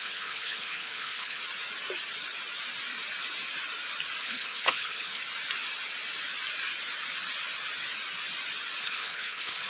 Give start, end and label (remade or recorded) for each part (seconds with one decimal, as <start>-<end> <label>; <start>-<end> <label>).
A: 0.0-1.4 remade; 1.4-4.2 recorded; 4.2-5.2 remade; 5.2-8.8 recorded; 8.8-9.7 remade